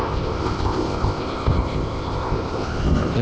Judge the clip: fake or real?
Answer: fake